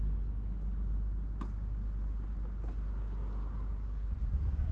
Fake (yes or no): no